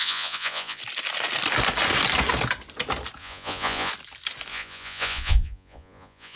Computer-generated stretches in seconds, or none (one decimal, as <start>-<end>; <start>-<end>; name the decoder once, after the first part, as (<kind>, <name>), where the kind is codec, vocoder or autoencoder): 0.0-0.8 (vocoder, Vocos); 3.2-3.9; 4.5-6.4